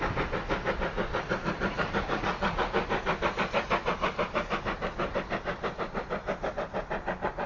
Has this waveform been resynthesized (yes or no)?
no